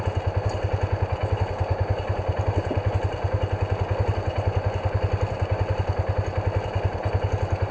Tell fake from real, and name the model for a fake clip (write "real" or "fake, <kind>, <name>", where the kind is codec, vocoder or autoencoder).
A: real